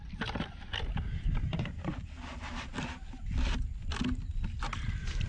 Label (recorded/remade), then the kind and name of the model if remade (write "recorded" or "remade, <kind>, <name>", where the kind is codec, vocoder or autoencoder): recorded